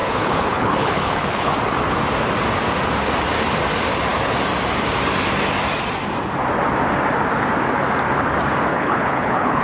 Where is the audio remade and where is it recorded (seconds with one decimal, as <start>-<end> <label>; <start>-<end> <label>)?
0.0-1.5 remade; 1.5-8.7 recorded; 8.7-9.6 remade